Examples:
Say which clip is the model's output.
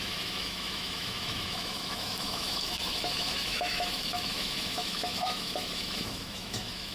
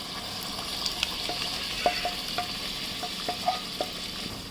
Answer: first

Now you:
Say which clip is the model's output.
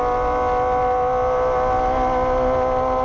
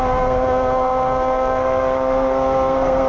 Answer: second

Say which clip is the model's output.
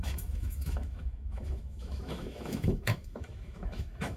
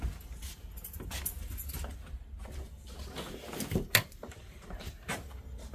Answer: first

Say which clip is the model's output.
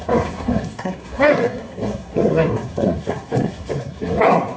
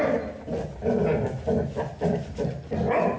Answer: first